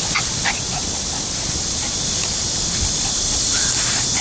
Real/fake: real